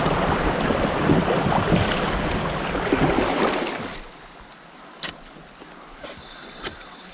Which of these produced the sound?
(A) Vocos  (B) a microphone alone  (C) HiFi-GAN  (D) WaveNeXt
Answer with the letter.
B